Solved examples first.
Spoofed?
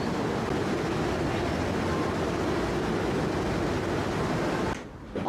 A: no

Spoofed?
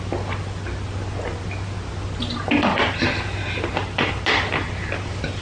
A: no